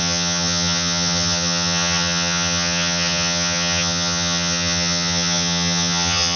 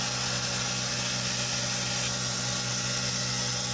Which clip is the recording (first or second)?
second